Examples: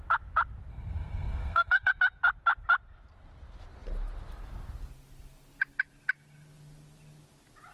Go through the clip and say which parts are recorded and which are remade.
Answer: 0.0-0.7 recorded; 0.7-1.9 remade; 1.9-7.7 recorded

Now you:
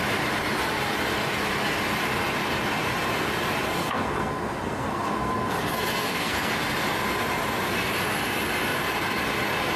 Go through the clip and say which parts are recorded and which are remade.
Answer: 0.0-3.8 recorded; 3.8-6.5 remade; 6.5-9.8 recorded

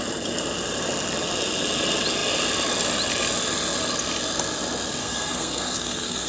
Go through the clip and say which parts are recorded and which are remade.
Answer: 0.0-5.0 recorded; 5.0-6.3 remade

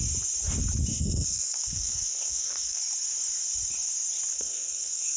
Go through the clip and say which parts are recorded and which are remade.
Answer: 0.0-0.9 recorded; 0.9-2.8 remade; 2.8-4.3 recorded; 4.3-5.2 remade

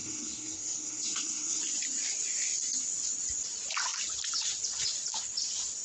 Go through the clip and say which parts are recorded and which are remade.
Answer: 0.0-1.6 remade; 1.6-5.8 recorded

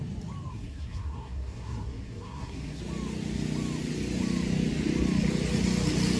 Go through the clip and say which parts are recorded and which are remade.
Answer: 0.0-0.5 recorded; 0.5-2.8 remade; 2.8-6.2 recorded